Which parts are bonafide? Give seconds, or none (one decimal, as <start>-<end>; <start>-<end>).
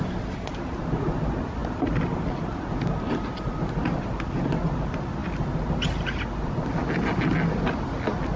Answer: 0.0-8.4